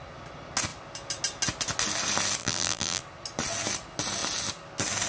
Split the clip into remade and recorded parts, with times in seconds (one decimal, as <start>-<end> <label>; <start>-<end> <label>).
0.0-2.4 recorded; 2.4-3.0 remade; 3.0-5.1 recorded